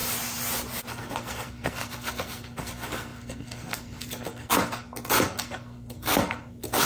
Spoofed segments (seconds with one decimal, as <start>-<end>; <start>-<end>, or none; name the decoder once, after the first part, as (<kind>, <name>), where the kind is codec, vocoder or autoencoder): 0.9-6.9 (codec, SNAC)